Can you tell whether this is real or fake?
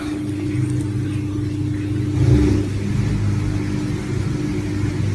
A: real